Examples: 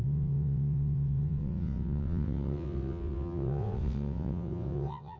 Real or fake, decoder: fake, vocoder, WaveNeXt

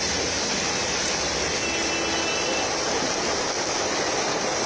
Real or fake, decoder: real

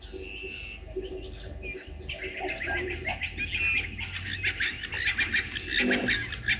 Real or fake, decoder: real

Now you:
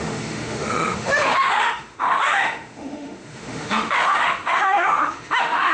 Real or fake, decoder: fake, autoencoder, DAC-VAE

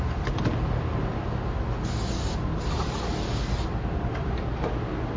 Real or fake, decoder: real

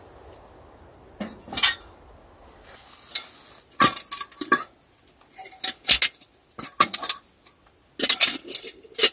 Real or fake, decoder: real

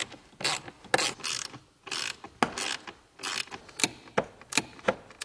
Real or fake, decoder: real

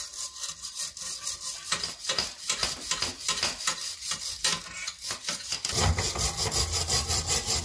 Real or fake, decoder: real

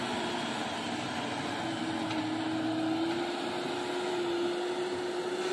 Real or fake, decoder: real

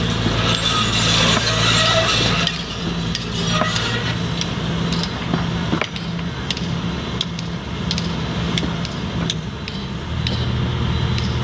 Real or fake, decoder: real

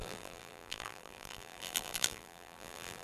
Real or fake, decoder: fake, vocoder, BigVGAN v2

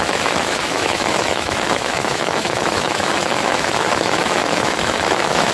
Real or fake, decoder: fake, autoencoder, DAC-VAE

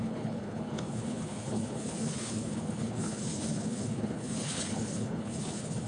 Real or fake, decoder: fake, codec, HILCodec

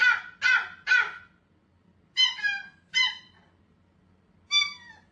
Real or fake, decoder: real